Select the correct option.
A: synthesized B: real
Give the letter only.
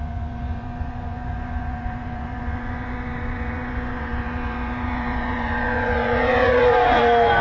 A